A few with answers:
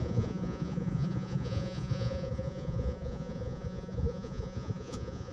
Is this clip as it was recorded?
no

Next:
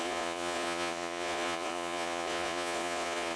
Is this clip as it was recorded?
no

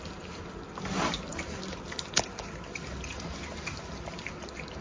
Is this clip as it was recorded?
yes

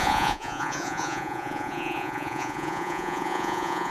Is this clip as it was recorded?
no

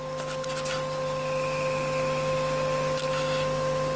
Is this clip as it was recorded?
yes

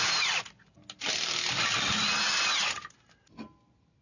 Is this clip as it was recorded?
yes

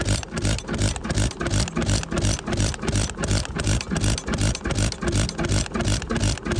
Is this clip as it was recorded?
yes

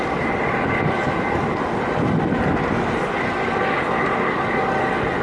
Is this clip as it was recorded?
yes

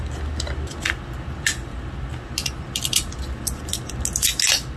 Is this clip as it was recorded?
yes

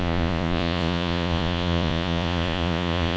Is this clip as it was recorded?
no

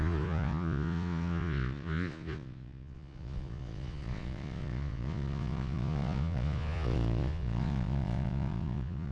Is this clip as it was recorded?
no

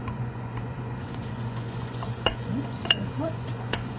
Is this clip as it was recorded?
no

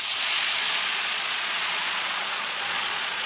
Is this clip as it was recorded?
no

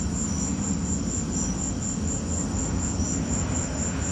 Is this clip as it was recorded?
yes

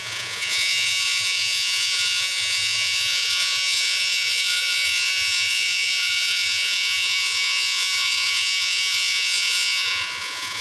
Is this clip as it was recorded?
no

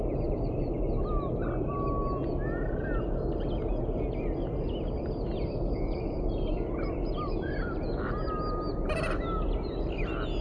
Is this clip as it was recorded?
yes